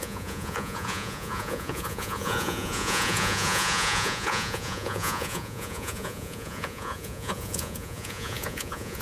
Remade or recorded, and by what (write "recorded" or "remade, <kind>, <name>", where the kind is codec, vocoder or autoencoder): remade, vocoder, Vocos